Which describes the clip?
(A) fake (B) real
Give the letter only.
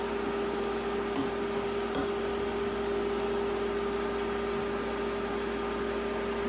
B